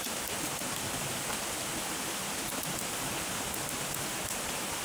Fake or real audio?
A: real